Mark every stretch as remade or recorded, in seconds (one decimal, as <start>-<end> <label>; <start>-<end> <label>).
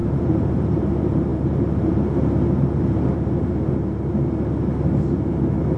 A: 0.0-0.9 remade; 0.9-5.8 recorded